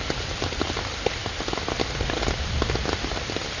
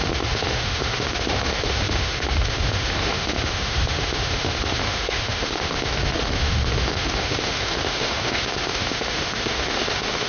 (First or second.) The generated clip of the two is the second